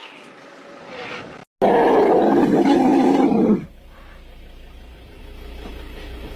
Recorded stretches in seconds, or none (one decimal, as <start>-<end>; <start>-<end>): 1.4-2.1; 5.7-6.4